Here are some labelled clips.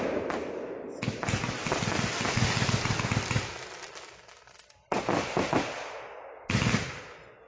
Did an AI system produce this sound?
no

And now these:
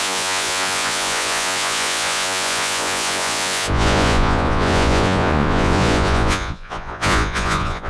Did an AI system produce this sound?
yes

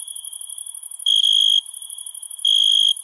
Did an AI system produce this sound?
no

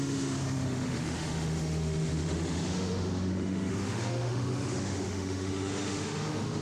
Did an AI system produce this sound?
yes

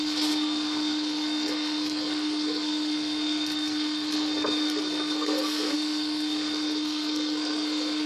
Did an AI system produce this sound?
yes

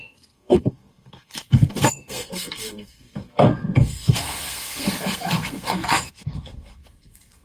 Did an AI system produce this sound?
yes